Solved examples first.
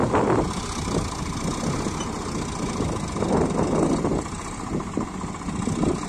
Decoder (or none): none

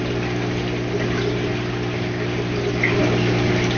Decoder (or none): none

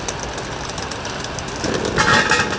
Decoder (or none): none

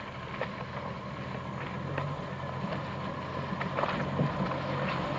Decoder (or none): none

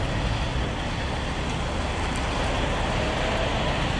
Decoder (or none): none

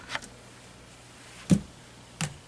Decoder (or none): none